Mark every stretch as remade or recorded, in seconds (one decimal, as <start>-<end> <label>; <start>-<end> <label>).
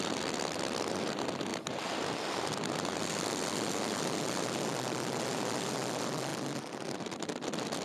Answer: 0.0-7.8 recorded